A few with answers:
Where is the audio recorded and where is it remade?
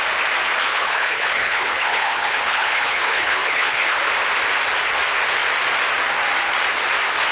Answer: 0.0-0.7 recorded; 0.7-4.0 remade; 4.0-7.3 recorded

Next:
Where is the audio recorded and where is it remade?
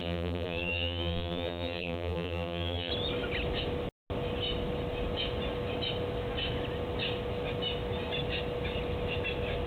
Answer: 0.0-2.9 remade; 2.9-9.7 recorded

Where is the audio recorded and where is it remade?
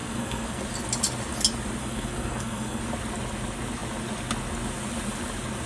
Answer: 0.0-0.6 remade; 0.6-1.8 recorded; 1.8-2.8 remade; 2.8-5.7 recorded